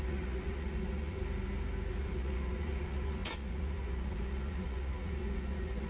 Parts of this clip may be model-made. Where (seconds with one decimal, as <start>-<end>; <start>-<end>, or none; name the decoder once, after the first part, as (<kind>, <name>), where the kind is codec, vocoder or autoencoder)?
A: 0.0-1.2 (vocoder, Vocos); 2.0-5.9